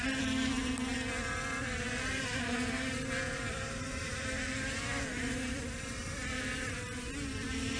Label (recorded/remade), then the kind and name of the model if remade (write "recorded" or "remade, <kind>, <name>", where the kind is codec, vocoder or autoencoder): remade, vocoder, BigVGAN v2